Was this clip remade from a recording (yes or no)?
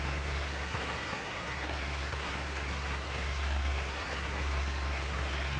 yes